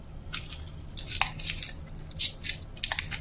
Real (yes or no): yes